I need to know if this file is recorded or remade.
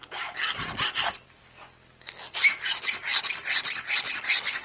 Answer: recorded